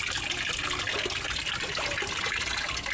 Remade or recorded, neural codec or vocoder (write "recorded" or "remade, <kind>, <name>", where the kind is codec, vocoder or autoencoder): recorded